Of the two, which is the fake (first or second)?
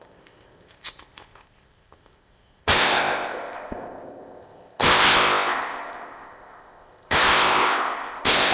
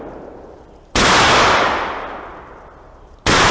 first